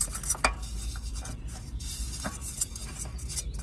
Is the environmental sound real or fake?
real